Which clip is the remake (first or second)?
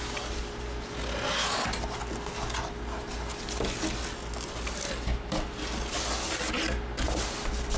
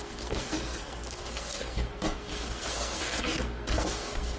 second